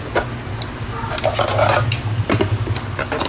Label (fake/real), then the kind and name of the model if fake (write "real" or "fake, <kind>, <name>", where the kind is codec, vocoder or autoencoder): real